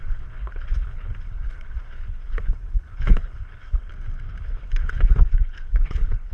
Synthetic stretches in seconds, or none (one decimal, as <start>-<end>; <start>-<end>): 0.0-3.9; 4.4-6.3